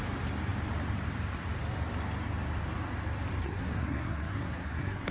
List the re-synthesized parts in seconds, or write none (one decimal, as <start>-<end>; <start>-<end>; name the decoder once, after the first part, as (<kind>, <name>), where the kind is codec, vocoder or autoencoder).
3.4-5.1 (codec, SNAC)